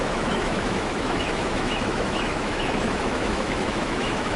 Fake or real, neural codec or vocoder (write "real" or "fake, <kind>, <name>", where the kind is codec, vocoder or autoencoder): fake, autoencoder, DAC-VAE